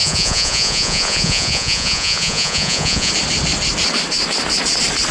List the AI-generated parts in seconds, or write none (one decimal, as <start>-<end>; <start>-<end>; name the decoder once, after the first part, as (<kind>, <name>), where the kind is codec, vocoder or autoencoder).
0.0-3.1 (vocoder, Vocos)

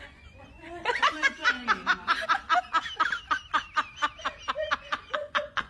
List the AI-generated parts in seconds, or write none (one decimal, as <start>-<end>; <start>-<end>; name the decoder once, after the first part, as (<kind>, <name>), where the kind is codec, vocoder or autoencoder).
0.0-1.4 (vocoder, Vocos); 4.8-5.7

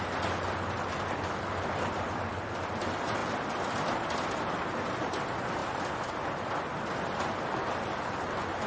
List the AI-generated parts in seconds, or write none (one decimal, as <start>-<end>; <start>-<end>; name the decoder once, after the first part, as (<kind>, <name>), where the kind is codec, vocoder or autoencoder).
none

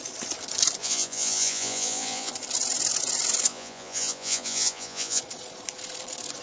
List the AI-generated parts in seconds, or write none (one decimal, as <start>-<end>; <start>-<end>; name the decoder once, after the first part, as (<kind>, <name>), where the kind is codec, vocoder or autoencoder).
0.8-2.3 (vocoder, Vocos); 3.5-5.2

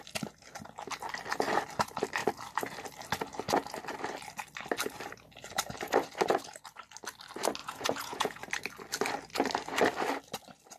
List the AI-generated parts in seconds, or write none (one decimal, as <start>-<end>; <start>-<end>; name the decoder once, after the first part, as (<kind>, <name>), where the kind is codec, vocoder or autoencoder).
7.6-8.4 (vocoder, Vocos)